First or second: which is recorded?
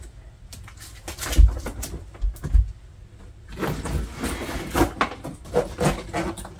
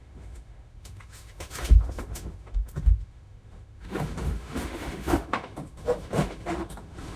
first